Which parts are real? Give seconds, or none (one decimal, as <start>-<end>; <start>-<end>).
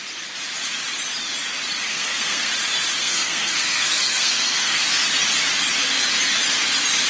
0.0-1.9; 2.5-3.0; 4.9-7.1